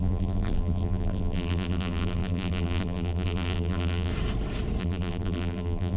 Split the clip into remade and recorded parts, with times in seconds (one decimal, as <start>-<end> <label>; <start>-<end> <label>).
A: 0.0-4.1 remade; 4.1-4.8 recorded; 4.8-6.0 remade